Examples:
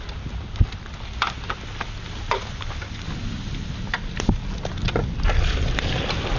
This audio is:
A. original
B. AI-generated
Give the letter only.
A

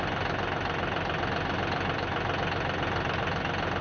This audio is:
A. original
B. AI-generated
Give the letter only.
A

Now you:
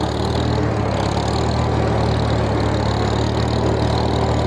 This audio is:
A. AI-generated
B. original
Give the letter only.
B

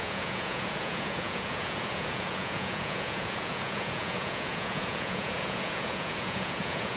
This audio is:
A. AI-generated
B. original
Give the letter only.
A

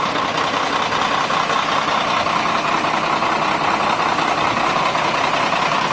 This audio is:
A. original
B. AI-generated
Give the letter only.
A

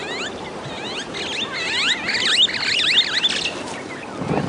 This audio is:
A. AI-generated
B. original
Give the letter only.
B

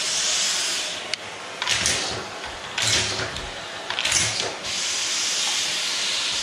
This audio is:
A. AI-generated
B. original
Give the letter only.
B